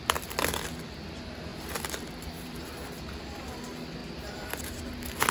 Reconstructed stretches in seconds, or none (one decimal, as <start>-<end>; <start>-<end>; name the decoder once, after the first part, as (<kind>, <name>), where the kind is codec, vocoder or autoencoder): 1.5-3.2 (vocoder, BigVGAN v2)